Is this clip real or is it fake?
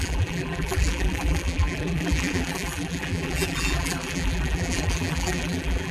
fake